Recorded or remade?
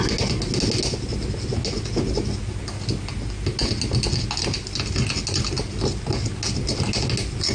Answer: recorded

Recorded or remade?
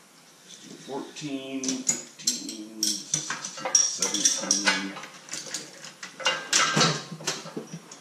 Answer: recorded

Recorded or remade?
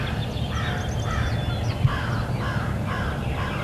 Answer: recorded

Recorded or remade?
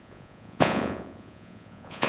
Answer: remade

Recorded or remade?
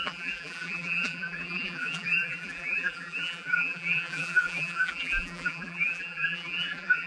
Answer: remade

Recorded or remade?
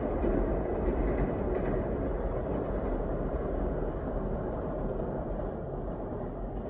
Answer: recorded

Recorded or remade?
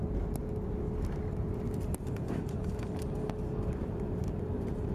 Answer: recorded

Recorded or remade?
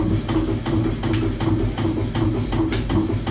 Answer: recorded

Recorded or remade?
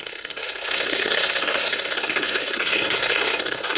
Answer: remade